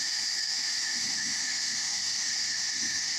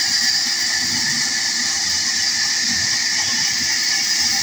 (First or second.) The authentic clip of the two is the second